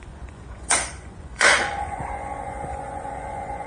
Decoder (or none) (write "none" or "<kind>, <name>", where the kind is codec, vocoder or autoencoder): vocoder, Vocos